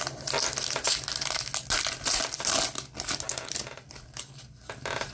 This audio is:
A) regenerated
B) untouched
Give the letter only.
B